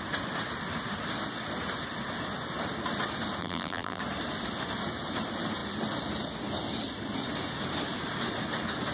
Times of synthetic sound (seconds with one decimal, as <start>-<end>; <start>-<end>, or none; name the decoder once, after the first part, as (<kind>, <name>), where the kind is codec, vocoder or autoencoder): 3.4-4.0 (vocoder, BigVGAN v2)